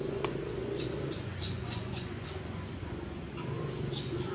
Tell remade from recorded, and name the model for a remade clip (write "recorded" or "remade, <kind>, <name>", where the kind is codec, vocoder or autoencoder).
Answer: remade, vocoder, Vocos